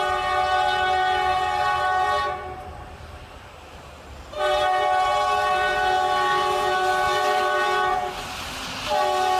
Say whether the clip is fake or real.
real